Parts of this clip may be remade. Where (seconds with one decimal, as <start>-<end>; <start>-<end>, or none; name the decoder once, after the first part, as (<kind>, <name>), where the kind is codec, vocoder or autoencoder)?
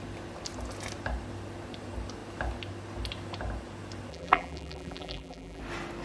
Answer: 4.1-5.6 (vocoder, BigVGAN v2)